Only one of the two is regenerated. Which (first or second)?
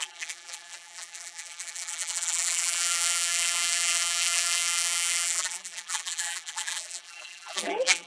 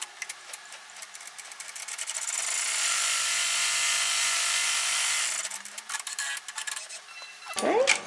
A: first